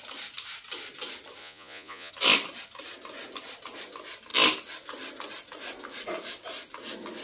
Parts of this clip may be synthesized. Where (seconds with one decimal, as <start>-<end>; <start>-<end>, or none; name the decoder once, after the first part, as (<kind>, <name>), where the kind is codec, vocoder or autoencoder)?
1.4-2.1 (vocoder, Vocos)

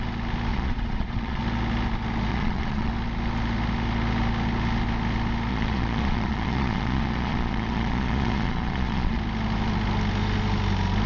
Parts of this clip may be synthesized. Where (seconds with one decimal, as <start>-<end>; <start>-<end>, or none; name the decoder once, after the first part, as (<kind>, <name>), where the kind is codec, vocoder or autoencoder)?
0.5-1.4 (vocoder, Vocos); 2.3-2.9; 5.5-9.2

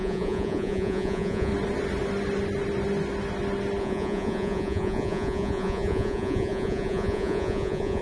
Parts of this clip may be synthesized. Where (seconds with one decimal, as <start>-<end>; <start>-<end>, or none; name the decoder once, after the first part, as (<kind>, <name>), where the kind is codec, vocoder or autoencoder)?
0.0-1.5 (vocoder, Vocos); 3.8-8.0

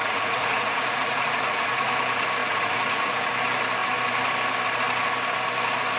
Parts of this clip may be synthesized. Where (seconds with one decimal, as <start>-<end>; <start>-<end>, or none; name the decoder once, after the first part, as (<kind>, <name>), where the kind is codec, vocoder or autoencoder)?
0.0-1.9 (vocoder, Vocos); 2.4-3.3

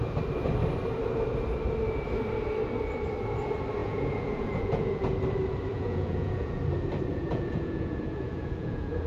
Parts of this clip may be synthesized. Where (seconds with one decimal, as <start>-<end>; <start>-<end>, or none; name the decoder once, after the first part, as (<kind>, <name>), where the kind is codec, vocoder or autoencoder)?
3.8-5.0 (vocoder, Vocos); 5.7-6.6; 7.1-9.1

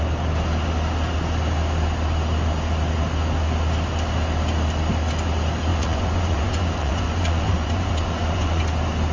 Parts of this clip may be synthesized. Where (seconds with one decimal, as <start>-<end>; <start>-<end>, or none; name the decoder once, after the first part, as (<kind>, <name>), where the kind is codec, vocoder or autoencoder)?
5.7-8.6 (vocoder, Vocos)